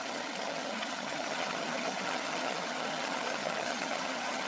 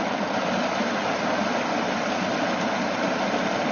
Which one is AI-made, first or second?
first